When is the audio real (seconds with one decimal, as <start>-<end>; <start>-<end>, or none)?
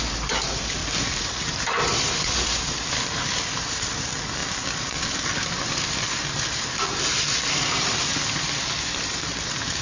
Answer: 0.0-0.8; 3.9-4.4; 8.2-9.8